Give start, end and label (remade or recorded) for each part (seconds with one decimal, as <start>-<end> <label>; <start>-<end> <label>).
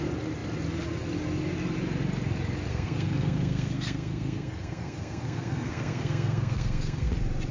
0.0-2.7 recorded; 2.7-7.1 remade; 7.1-7.5 recorded